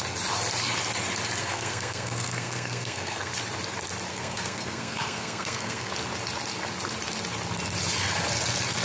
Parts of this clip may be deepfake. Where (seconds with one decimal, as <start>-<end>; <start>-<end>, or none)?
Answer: 1.4-3.3; 4.1-5.9

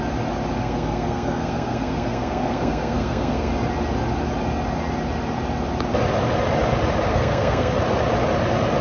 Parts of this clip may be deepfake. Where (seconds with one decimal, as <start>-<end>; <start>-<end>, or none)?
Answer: 0.6-3.5; 7.1-7.7

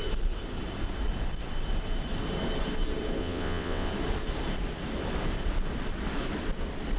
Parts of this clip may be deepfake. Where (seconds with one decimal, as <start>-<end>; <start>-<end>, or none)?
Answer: 3.2-3.9

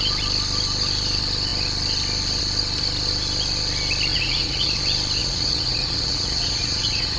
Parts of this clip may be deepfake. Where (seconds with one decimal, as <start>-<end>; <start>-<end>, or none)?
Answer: 4.1-4.8; 5.2-7.2

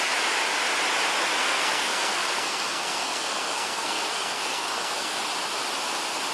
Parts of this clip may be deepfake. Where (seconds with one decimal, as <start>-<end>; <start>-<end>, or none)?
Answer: 1.4-5.2